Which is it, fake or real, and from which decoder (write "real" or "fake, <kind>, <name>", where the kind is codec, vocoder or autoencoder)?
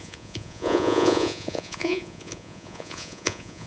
fake, vocoder, Vocos